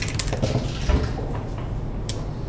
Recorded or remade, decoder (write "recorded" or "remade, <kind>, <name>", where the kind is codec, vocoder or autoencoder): remade, vocoder, BigVGAN v2